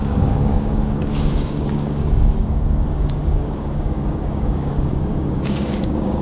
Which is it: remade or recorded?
remade